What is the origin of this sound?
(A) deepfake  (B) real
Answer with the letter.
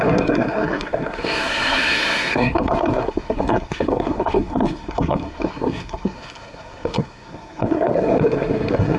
A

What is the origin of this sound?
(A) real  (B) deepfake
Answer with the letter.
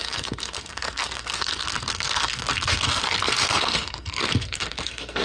B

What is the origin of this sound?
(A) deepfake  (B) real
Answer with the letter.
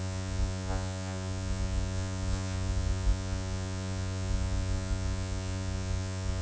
A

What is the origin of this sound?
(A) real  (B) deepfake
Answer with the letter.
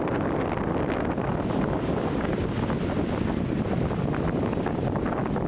A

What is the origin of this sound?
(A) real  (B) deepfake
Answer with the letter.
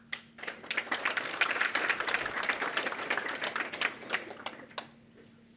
A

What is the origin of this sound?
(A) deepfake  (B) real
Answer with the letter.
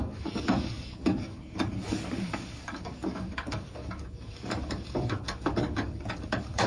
A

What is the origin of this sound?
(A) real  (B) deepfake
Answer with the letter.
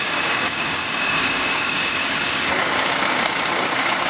B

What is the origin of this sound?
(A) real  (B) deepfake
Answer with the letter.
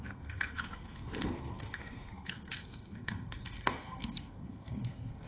B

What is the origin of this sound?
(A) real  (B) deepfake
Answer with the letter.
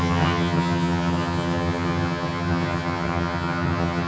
B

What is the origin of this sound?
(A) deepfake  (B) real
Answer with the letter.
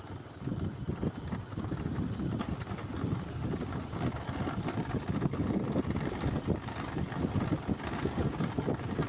B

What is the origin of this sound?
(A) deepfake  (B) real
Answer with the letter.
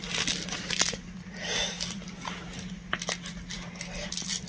B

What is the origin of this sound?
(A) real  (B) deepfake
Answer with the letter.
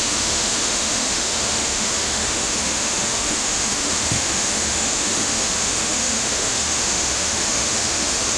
B